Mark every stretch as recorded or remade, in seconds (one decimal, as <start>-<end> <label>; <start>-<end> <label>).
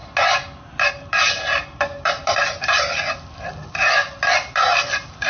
0.0-5.3 recorded